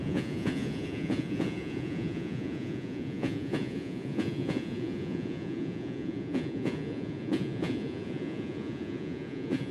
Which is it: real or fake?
fake